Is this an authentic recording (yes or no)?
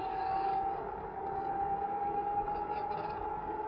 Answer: no